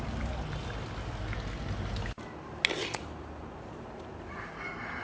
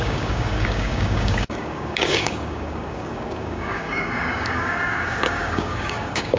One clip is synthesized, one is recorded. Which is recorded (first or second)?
first